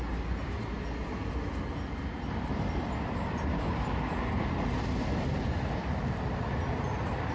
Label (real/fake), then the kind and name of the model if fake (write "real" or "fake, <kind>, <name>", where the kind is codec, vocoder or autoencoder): real